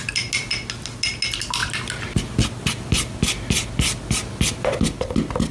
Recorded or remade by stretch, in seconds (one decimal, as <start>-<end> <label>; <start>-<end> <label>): 0.0-5.5 recorded